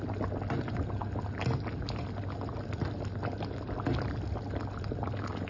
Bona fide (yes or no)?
yes